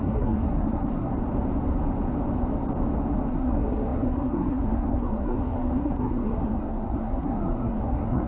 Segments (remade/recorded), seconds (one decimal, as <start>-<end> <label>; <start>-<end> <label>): 0.0-1.1 remade; 1.1-3.3 recorded; 3.3-8.3 remade